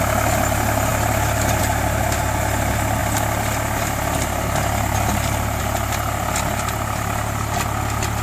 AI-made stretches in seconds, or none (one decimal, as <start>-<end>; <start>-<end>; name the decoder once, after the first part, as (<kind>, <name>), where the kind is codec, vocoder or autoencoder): none